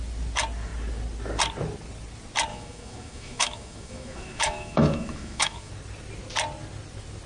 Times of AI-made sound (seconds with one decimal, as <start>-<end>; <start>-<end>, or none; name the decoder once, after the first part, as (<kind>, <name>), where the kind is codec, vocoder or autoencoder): 2.5-5.7 (autoencoder, DAC-VAE)